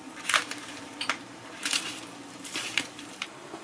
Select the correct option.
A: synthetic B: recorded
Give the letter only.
A